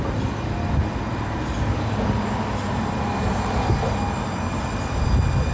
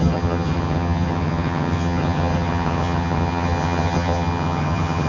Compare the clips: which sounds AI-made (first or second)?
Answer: second